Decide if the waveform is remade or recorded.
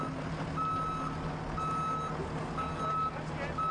recorded